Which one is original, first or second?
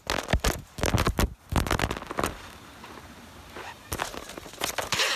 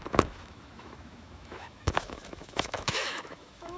first